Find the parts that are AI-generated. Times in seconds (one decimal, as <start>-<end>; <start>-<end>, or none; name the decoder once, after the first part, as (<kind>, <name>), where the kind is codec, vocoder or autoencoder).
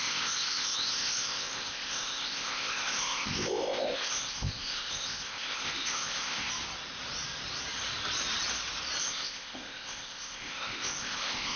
0.0-6.5 (codec, ZipCodec); 9.0-11.6